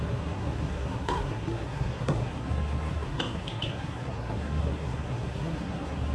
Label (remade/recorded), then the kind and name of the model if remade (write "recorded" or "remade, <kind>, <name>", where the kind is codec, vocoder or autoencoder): remade, codec, SNAC